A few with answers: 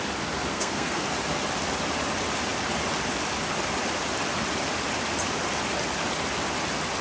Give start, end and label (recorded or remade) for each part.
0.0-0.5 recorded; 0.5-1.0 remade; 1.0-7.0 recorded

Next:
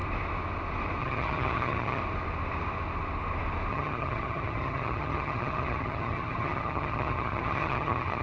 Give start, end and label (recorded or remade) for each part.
0.0-1.0 recorded; 1.0-2.0 remade; 2.0-3.7 recorded; 3.7-8.2 remade

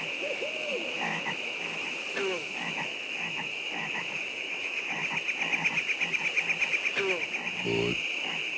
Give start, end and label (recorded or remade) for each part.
0.0-5.0 remade; 5.0-8.2 recorded; 8.2-8.6 remade

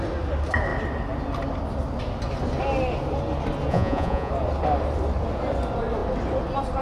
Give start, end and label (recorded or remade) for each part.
0.0-3.7 recorded; 3.7-4.3 remade; 4.3-6.8 recorded